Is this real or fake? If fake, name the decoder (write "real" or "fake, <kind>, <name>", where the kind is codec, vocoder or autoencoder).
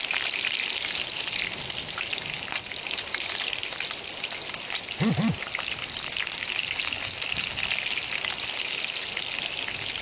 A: real